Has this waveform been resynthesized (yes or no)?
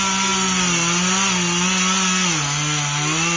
no